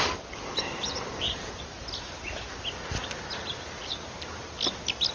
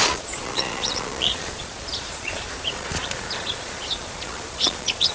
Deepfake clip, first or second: second